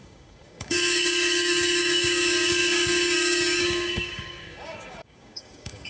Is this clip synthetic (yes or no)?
yes